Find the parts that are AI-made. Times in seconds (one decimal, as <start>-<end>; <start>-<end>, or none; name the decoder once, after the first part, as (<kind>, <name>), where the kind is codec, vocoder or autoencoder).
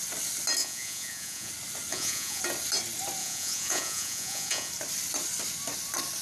0.6-1.5 (vocoder, Vocos); 1.9-2.4; 3.2-4.7